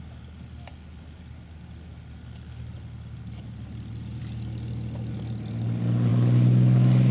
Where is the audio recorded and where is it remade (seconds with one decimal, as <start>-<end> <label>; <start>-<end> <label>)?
0.0-7.1 recorded